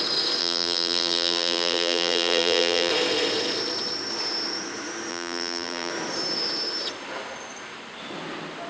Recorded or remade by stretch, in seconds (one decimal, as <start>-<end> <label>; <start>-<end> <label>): 0.0-0.4 recorded; 0.4-2.9 remade; 2.9-5.1 recorded; 5.1-5.9 remade; 5.9-8.7 recorded